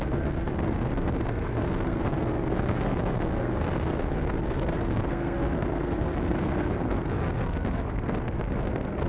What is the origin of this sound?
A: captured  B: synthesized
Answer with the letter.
B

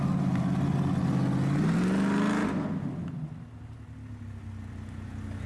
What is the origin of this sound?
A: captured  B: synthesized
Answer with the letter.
A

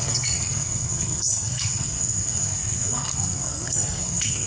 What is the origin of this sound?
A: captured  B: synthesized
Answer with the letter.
B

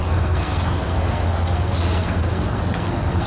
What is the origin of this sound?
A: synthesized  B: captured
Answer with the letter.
A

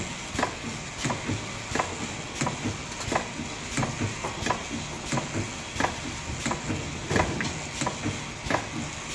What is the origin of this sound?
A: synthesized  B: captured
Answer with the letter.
B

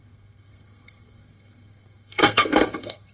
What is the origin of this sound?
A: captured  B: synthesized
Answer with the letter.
B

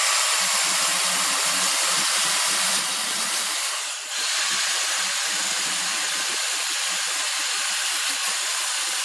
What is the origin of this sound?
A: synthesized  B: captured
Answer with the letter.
B